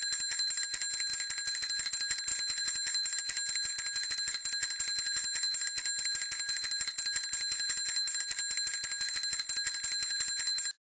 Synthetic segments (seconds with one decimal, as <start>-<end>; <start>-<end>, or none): none